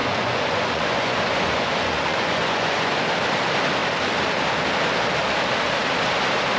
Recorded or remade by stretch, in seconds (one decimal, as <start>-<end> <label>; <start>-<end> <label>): 0.0-3.0 remade; 3.0-6.6 recorded